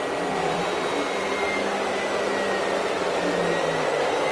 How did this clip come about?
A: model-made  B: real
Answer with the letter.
B